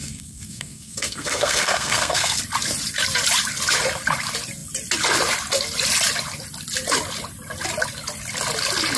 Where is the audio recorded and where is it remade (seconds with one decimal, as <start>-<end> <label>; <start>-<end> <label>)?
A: 0.0-2.4 remade; 2.4-9.0 recorded